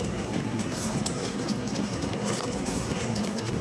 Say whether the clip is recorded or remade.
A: remade